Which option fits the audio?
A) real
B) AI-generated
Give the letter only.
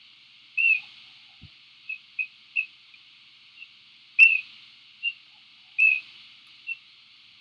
A